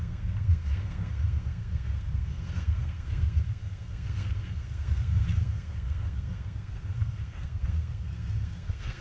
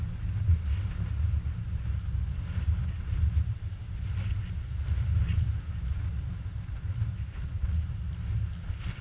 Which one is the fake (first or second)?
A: first